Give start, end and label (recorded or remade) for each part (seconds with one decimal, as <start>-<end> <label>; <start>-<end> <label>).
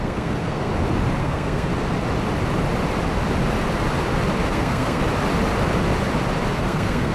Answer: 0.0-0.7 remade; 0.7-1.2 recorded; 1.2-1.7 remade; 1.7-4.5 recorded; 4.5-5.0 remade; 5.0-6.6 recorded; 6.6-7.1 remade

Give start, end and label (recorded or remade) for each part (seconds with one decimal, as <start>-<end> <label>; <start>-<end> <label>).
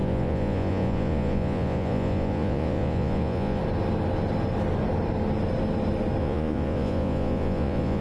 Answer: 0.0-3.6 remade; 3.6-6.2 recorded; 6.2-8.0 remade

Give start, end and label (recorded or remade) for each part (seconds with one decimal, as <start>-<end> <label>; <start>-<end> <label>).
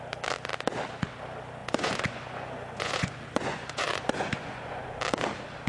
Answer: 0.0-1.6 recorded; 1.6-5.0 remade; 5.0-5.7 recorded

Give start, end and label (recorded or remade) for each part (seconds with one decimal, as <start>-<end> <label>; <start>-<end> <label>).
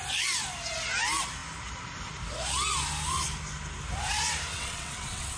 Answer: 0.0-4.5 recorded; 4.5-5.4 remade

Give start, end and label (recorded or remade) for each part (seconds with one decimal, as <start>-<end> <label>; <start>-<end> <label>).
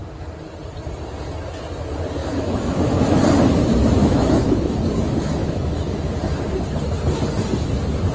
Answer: 0.0-2.2 recorded; 2.2-3.2 remade; 3.2-4.0 recorded; 4.0-4.8 remade; 4.8-5.4 recorded; 5.4-6.1 remade; 6.1-8.1 recorded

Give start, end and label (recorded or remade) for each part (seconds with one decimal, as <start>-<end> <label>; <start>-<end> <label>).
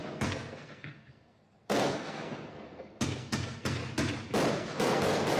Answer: 0.0-3.8 remade; 3.8-4.5 recorded; 4.5-5.4 remade